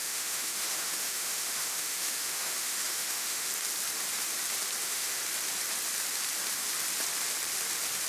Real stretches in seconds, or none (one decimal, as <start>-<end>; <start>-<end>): 3.5-4.8; 5.2-8.1